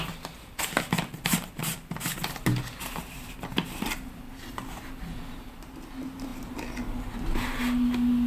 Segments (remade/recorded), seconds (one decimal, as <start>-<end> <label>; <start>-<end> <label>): 0.0-8.3 recorded

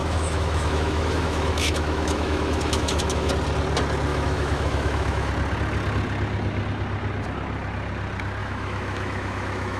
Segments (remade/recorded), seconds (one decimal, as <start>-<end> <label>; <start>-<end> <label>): 0.0-3.3 remade; 3.3-4.1 recorded; 4.1-5.3 remade; 5.3-8.4 recorded; 8.4-9.8 remade

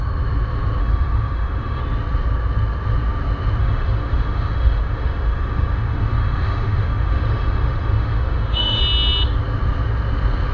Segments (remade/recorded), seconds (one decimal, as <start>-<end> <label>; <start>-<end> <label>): 0.0-0.8 recorded; 0.8-1.8 remade; 1.8-3.6 recorded; 3.6-8.8 remade; 8.8-10.5 recorded

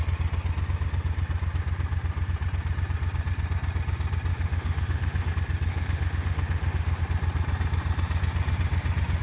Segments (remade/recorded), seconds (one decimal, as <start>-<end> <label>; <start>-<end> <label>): 0.0-4.3 recorded; 4.3-5.3 remade; 5.3-5.7 recorded; 5.7-7.0 remade; 7.0-9.2 recorded